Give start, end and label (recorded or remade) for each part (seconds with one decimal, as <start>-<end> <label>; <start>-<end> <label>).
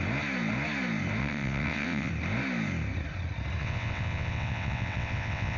0.0-1.2 recorded; 1.2-2.1 remade; 2.1-3.6 recorded; 3.6-5.6 remade